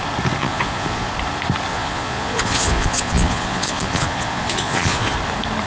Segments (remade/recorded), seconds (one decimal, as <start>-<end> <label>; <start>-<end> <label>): 0.0-0.4 recorded; 0.4-1.1 remade; 1.1-1.7 recorded; 1.7-5.1 remade; 5.1-5.7 recorded